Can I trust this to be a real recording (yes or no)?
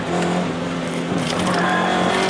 yes